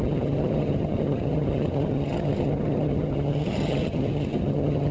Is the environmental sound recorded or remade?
remade